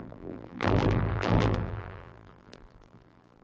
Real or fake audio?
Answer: fake